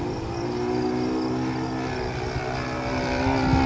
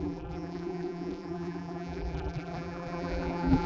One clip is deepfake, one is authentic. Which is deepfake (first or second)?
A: second